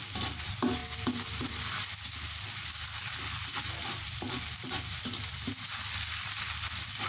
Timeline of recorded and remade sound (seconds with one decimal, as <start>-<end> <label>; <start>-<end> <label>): 0.0-7.1 remade